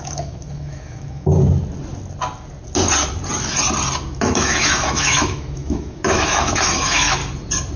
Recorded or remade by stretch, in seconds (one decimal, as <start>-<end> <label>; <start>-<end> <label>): 0.0-1.3 remade; 1.3-4.2 recorded; 4.2-7.2 remade; 7.2-7.8 recorded